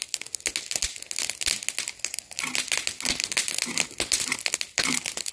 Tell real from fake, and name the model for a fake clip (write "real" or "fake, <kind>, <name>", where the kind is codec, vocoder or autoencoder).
real